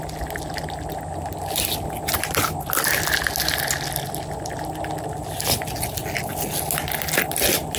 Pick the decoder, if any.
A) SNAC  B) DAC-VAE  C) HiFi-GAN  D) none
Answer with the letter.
D